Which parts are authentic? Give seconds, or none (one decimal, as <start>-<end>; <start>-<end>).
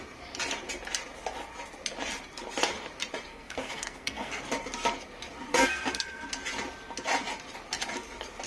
0.0-3.3; 4.4-5.5; 6.3-8.5